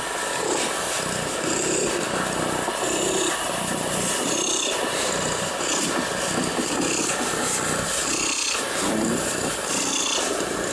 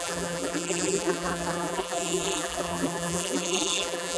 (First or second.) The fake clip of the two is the second